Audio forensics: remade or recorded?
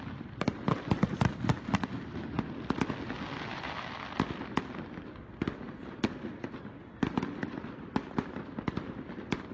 recorded